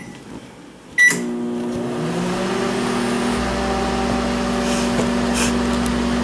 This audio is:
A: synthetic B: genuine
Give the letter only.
B